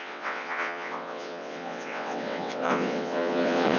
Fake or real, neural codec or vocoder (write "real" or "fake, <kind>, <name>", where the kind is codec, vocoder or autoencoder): fake, vocoder, WaveNeXt